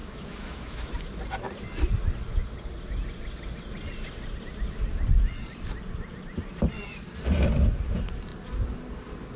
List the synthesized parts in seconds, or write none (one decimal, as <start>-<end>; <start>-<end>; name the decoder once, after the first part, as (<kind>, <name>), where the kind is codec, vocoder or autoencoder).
0.0-0.9 (autoencoder, DAC-VAE)